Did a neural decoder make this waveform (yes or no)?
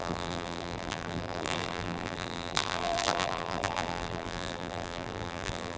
yes